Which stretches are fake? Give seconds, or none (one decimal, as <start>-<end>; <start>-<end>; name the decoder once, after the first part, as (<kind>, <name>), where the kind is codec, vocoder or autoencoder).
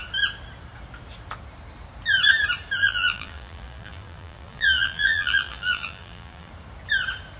2.8-6.5 (vocoder, BigVGAN v2)